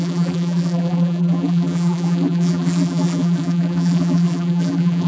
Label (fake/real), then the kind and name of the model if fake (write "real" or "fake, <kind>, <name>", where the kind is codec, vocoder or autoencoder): fake, vocoder, BigVGAN v2